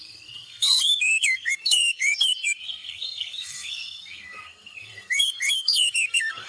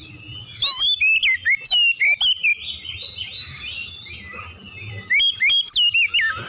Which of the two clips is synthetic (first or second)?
first